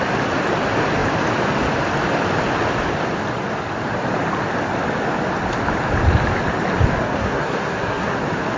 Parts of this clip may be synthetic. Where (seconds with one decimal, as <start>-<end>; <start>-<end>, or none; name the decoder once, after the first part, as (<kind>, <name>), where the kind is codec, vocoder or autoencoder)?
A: 7.0-8.2 (codec, SNAC)